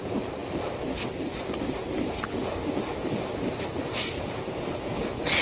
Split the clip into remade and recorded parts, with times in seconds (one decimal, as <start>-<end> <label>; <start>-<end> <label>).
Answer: 0.0-5.4 recorded